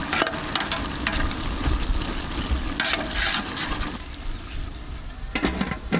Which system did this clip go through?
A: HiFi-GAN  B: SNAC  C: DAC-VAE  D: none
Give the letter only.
D